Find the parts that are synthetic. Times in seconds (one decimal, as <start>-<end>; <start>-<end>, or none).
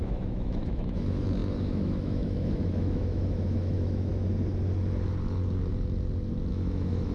0.0-4.1; 6.5-7.1